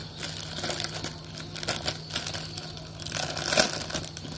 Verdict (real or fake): real